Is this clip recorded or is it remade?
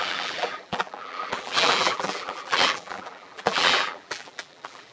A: remade